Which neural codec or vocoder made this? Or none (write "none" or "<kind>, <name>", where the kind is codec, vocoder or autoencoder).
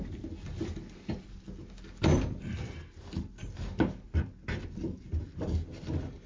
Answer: none